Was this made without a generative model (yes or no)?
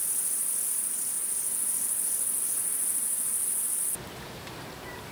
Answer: no